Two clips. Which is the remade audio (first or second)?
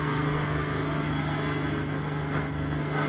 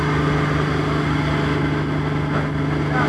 first